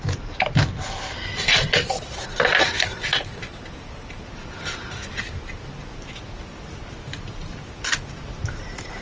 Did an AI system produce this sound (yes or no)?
no